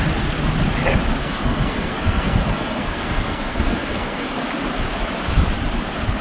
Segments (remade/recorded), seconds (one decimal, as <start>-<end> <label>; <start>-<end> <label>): 0.0-1.2 recorded; 1.2-4.4 remade; 4.4-6.2 recorded